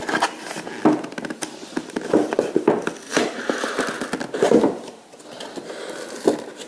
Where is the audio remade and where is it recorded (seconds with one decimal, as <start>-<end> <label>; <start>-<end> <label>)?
0.0-3.1 recorded; 3.1-3.8 remade; 3.8-6.7 recorded